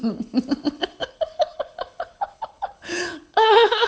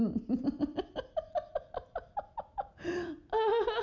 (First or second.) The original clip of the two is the second